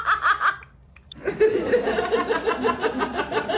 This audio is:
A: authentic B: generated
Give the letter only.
A